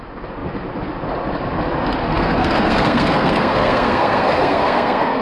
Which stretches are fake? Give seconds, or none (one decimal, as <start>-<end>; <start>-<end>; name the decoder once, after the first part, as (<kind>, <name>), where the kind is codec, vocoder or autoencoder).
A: 2.0-5.2 (codec, SNAC)